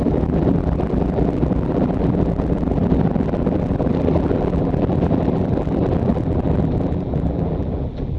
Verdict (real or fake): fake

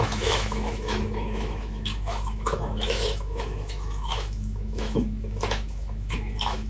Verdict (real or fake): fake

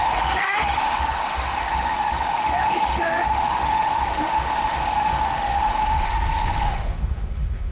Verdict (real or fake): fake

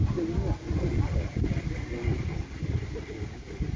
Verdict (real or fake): real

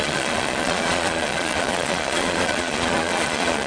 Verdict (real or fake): fake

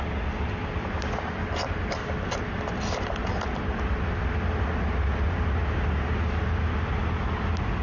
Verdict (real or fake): real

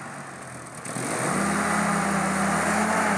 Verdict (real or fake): real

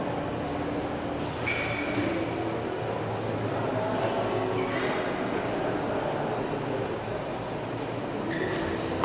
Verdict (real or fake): real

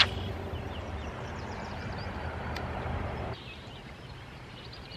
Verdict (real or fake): fake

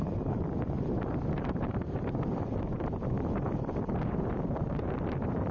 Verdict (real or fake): fake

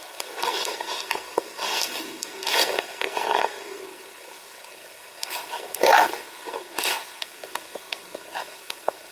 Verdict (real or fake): fake